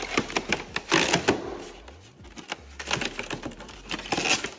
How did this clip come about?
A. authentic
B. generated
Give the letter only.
A